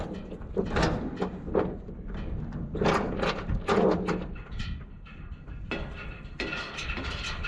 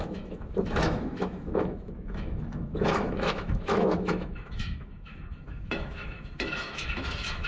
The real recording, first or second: first